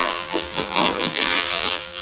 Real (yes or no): no